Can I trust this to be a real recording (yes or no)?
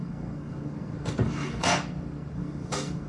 no